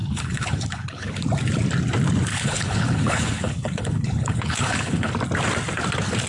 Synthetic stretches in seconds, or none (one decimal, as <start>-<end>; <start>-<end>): 0.0-1.3; 2.3-5.1